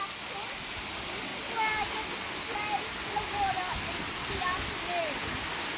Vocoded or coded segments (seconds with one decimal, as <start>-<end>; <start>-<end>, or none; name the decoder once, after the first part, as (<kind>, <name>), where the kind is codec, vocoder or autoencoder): none